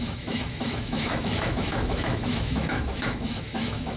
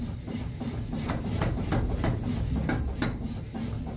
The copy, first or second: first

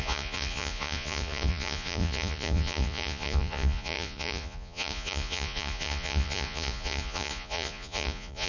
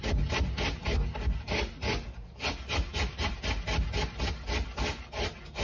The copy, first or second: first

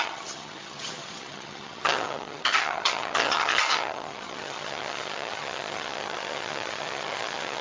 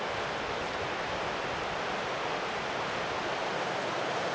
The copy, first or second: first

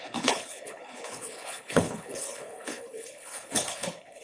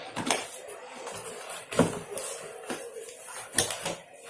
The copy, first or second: first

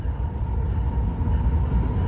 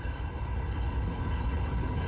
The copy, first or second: second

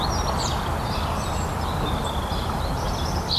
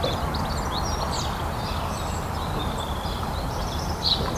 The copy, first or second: second